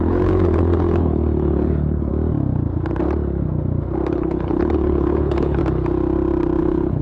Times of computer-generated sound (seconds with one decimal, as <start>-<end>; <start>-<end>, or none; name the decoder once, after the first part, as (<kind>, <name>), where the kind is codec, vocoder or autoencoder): 0.0-2.1 (codec, HILCodec); 4.1-5.6; 6.6-7.0